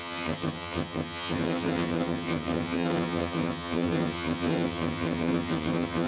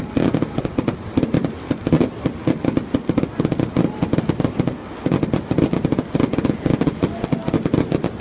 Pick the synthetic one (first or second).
first